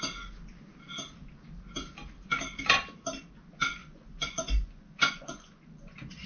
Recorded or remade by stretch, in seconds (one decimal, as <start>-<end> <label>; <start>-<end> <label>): 0.0-3.8 recorded; 3.8-6.3 remade